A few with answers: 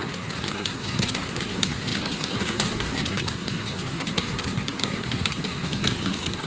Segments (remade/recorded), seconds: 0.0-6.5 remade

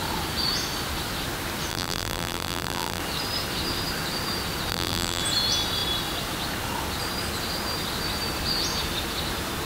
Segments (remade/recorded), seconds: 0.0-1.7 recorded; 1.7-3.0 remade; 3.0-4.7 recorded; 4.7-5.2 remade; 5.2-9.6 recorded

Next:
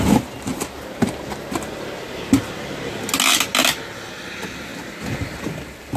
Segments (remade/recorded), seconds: 0.0-6.0 recorded

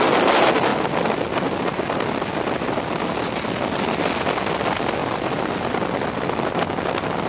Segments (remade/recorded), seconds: 0.0-7.3 recorded

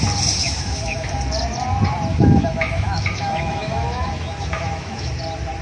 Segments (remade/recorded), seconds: 0.0-0.4 recorded; 0.4-1.2 remade; 1.2-2.1 recorded; 2.1-5.1 remade; 5.1-5.6 recorded

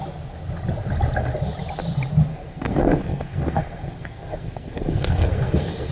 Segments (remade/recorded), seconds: 0.0-2.3 recorded; 2.3-5.9 remade